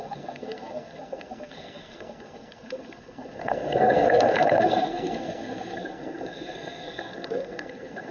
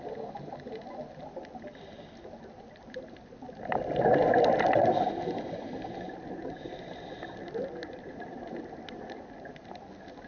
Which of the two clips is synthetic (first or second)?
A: first